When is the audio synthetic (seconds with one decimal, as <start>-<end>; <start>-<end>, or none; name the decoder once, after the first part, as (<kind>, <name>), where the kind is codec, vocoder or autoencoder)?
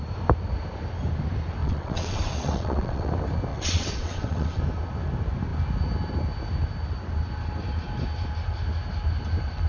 1.6-3.1 (vocoder, WaveNeXt); 3.5-4.6